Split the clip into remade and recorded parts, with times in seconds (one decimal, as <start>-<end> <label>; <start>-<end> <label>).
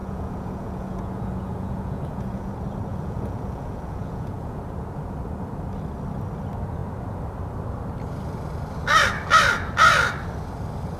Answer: 0.0-2.5 remade; 2.5-2.9 recorded; 2.9-4.6 remade; 4.6-11.0 recorded